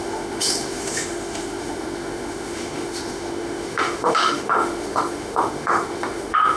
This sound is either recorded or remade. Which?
remade